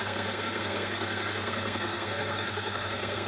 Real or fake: fake